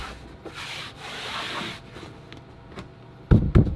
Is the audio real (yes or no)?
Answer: yes